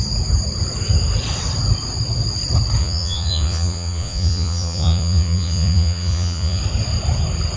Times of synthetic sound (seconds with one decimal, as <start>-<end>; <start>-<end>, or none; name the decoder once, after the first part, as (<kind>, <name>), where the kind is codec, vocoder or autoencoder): 2.8-6.6 (vocoder, Vocos)